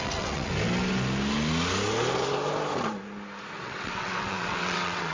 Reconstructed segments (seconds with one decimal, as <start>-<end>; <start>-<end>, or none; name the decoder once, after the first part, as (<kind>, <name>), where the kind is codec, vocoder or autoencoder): 0.0-0.5 (vocoder, WaveNeXt); 3.6-5.1

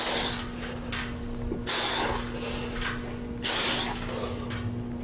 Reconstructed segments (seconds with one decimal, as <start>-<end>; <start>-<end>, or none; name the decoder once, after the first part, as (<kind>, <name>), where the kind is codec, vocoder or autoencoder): none

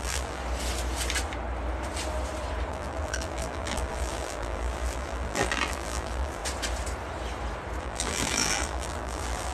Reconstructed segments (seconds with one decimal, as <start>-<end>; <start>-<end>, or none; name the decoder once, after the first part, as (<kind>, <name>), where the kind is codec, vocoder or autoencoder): 0.0-0.4 (vocoder, BigVGAN v2); 2.7-6.4; 7.8-9.5

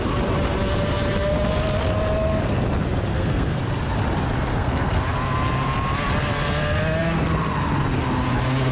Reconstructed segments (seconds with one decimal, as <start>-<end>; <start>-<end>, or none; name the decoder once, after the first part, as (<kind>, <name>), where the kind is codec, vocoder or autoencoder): 3.1-3.6 (codec, SNAC); 4.5-5.0

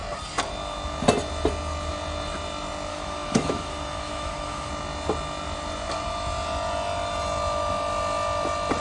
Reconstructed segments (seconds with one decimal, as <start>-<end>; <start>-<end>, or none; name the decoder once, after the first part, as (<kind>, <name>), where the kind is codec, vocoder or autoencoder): 2.9-4.7 (autoencoder, DAC-VAE)

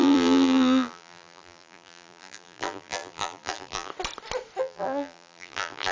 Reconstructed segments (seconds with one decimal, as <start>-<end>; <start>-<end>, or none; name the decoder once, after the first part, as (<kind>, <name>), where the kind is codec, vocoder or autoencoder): 0.0-3.9 (vocoder, BigVGAN v2); 4.6-5.9

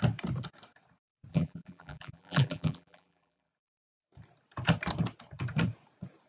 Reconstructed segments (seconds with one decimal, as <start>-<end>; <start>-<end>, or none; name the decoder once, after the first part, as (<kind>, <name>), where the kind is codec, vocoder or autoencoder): 1.3-3.5 (vocoder, BigVGAN v2)